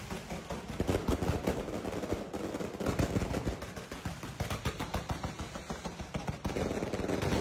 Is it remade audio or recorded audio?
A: recorded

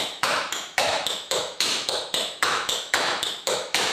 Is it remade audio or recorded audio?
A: remade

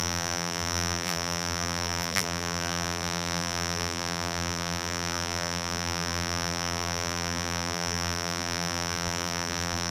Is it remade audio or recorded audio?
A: remade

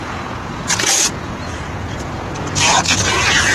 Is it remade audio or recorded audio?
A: remade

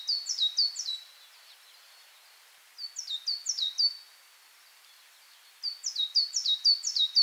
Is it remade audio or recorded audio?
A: recorded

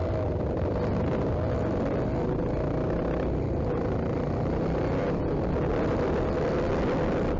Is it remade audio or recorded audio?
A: recorded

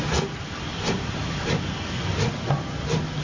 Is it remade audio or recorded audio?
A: recorded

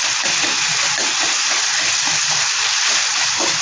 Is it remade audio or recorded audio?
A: recorded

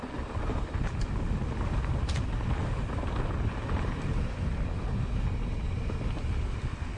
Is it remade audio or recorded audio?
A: recorded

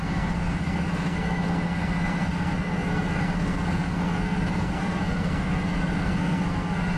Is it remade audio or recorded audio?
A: remade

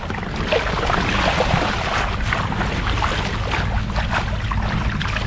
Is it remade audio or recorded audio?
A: recorded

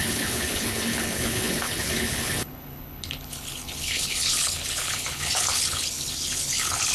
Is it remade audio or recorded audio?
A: remade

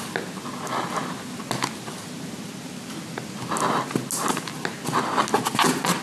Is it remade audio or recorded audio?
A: recorded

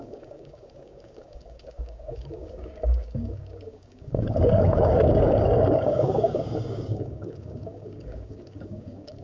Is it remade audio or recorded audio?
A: remade